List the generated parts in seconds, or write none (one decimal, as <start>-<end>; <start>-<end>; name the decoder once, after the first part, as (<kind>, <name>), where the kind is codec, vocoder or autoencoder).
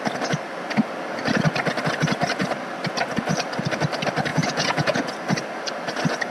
4.3-5.1 (vocoder, Vocos)